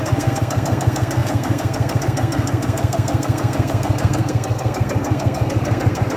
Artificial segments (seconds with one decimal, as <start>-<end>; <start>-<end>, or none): 0.0-6.2